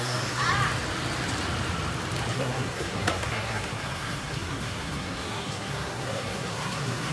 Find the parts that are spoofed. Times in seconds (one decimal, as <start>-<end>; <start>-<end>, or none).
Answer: 0.0-0.4; 2.3-7.1